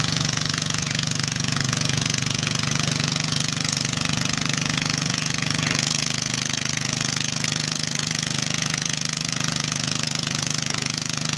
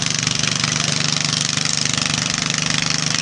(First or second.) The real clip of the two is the second